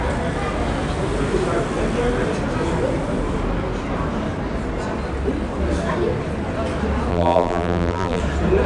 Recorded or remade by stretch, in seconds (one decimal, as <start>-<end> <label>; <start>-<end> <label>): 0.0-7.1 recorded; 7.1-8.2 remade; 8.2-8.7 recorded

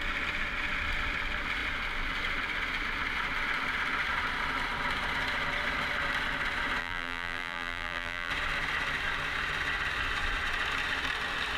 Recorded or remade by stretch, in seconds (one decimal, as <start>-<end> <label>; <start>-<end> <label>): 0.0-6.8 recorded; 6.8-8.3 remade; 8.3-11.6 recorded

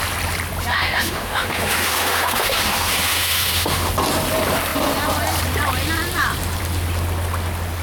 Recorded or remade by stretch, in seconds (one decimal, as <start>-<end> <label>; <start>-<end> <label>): 0.0-0.7 recorded; 0.7-3.9 remade; 3.9-7.8 recorded

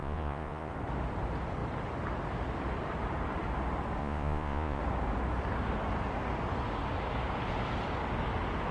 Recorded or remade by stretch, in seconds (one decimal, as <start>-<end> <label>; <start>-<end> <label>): 0.0-0.7 remade; 0.7-4.0 recorded; 4.0-4.8 remade; 4.8-8.7 recorded

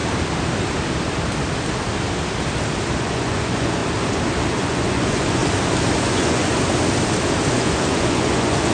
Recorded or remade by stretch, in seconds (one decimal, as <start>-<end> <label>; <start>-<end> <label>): 0.0-3.0 recorded; 3.0-3.8 remade; 3.8-4.5 recorded; 4.5-5.4 remade; 5.4-6.0 recorded; 6.0-6.5 remade; 6.5-7.5 recorded; 7.5-8.7 remade